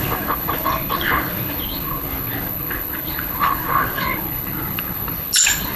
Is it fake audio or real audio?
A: fake